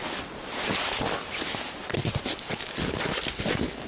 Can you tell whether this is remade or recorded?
recorded